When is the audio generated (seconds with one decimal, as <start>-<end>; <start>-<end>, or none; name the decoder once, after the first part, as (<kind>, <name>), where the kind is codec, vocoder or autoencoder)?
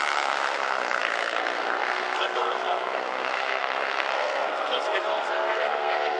0.0-6.2 (codec, SNAC)